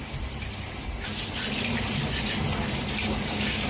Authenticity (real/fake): real